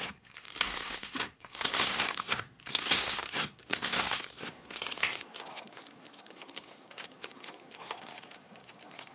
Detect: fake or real fake